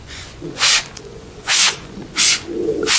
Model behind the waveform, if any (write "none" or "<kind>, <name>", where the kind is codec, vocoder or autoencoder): vocoder, Vocos